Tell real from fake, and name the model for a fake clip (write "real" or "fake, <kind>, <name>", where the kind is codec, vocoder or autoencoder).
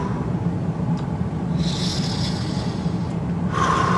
real